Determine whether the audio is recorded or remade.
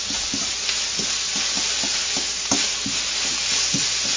recorded